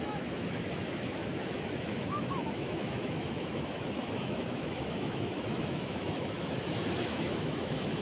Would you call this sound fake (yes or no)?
yes